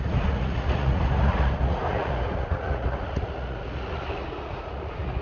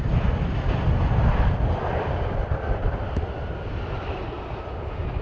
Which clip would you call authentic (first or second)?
second